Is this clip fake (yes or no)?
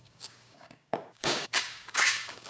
yes